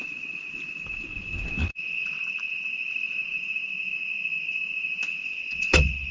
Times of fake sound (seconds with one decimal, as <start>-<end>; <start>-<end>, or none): 1.7-2.2; 5.1-6.1